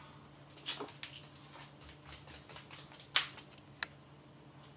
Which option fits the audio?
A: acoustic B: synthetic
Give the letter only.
A